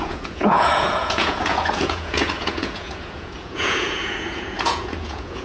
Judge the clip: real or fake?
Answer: fake